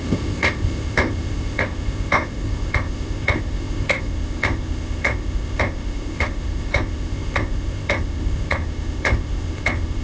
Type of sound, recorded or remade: remade